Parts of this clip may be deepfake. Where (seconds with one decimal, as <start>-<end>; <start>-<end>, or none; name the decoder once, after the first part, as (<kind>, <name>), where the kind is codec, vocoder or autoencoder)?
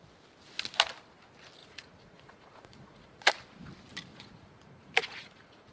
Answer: 1.6-3.3 (vocoder, Vocos); 4.1-5.7